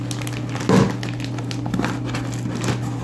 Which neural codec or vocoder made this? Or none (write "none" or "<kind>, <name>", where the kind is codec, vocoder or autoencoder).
none